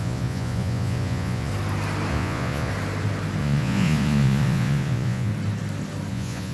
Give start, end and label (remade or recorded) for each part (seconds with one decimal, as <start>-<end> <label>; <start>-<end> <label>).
0.0-1.5 remade; 1.5-2.1 recorded; 2.1-2.7 remade; 2.7-3.4 recorded; 3.4-5.3 remade; 5.3-6.1 recorded; 6.1-6.5 remade